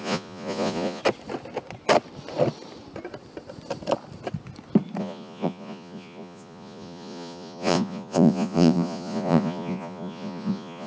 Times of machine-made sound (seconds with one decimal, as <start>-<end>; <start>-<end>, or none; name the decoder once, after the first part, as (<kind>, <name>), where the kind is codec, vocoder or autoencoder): 0.0-1.0 (vocoder, Vocos); 5.0-10.9